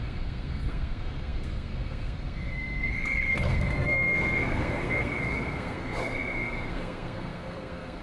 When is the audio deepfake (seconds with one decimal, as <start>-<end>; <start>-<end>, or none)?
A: 0.0-8.0

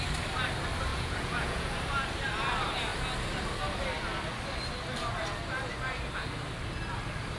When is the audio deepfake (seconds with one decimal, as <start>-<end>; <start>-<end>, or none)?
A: 0.9-1.7